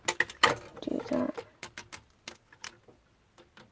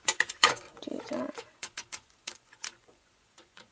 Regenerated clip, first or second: second